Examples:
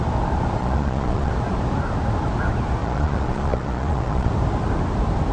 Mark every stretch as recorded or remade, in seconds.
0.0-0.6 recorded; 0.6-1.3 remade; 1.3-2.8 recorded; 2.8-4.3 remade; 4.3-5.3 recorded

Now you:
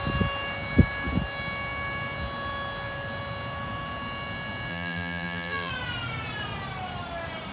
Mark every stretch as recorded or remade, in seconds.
0.0-4.7 recorded; 4.7-5.7 remade; 5.7-7.5 recorded